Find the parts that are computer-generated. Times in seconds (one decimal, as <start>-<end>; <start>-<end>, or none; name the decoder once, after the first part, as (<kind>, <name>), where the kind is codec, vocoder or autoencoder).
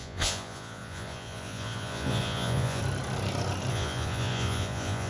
0.0-2.8 (vocoder, Vocos); 3.7-5.1